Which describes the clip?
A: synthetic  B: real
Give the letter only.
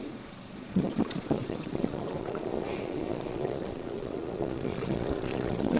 A